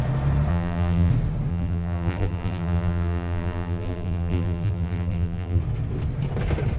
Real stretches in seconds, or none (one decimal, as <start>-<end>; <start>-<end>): 0.0-0.5; 1.1-1.5; 5.6-6.8